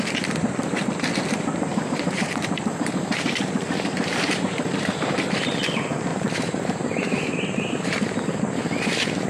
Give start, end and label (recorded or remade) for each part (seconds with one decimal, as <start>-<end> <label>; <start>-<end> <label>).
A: 0.0-1.7 recorded; 1.7-5.5 remade; 5.5-6.1 recorded; 6.1-8.2 remade; 8.2-9.3 recorded